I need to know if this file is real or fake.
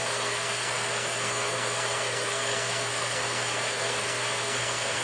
fake